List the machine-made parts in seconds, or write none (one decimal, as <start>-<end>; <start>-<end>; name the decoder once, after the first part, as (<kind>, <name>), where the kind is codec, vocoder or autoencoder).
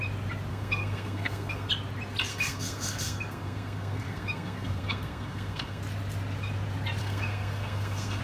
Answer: 0.5-1.7 (codec, SNAC); 2.3-5.8; 7.0-8.2